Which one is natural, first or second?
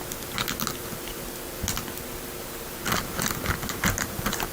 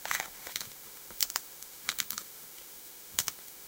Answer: first